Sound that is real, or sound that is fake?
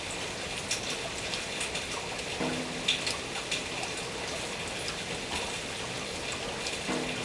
real